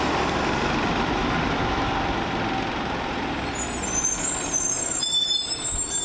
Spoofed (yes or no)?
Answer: no